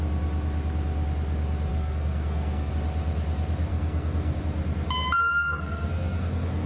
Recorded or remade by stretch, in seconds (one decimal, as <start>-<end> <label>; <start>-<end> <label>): 0.0-1.7 recorded; 1.7-2.7 remade; 2.7-3.7 recorded; 3.7-4.4 remade; 4.4-5.2 recorded; 5.2-6.7 remade